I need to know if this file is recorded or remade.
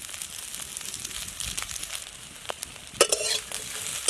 recorded